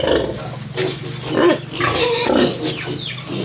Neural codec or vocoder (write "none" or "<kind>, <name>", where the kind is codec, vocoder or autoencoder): none